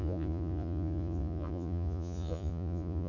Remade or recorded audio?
remade